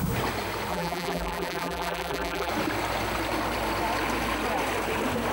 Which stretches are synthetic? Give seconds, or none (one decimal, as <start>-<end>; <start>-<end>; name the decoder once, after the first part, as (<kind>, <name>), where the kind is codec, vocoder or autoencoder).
0.7-2.5 (vocoder, BigVGAN v2)